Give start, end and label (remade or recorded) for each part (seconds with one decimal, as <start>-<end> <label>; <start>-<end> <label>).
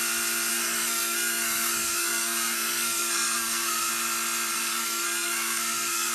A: 0.0-0.5 recorded; 0.5-3.9 remade; 3.9-4.5 recorded; 4.5-6.1 remade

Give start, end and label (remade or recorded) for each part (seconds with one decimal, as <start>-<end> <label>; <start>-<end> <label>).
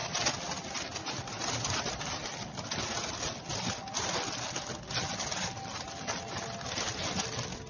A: 0.0-7.7 recorded